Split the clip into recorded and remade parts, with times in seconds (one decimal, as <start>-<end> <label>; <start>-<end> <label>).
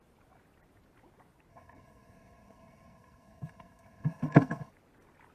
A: 0.0-1.5 recorded; 1.5-4.7 remade; 4.7-5.3 recorded